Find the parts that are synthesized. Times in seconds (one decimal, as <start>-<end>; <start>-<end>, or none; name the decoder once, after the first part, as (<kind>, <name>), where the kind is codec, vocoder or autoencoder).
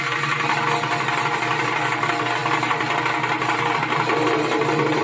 none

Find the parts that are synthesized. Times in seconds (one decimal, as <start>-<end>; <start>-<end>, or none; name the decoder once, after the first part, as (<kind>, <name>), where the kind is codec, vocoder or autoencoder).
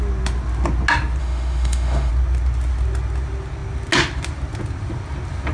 1.2-2.1 (autoencoder, DAC-VAE)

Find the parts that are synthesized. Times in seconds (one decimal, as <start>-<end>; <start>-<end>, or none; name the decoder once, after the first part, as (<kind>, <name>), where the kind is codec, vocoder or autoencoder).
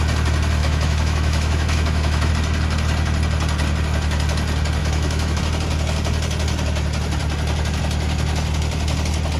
0.6-2.3 (autoencoder, DAC-VAE); 4.8-5.4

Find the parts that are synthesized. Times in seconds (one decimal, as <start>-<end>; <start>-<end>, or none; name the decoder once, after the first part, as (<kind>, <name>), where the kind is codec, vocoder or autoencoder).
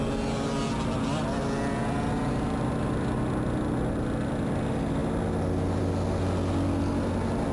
none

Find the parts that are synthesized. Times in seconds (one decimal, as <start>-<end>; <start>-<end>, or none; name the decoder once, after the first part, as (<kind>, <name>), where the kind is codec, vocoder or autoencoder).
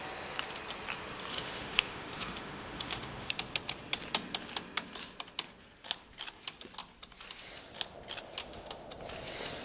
1.3-3.3 (autoencoder, DAC-VAE); 8.4-8.9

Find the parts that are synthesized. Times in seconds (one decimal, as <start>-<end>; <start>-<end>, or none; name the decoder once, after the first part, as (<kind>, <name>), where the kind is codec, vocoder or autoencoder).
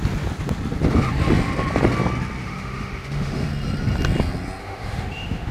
2.4-3.5 (autoencoder, DAC-VAE); 4.6-5.5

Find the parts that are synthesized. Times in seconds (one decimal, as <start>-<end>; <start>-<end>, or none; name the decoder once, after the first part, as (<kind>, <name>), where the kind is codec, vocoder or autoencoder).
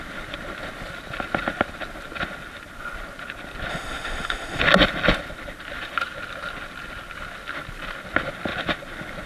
3.7-4.6 (autoencoder, DAC-VAE)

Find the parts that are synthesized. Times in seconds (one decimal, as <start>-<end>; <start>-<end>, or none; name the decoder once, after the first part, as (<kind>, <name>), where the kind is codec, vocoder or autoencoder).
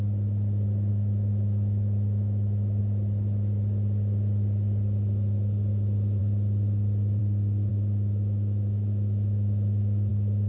0.9-2.8 (autoencoder, DAC-VAE); 7.7-10.1